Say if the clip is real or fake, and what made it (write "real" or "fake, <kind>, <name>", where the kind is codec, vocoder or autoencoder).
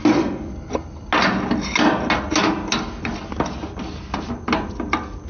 real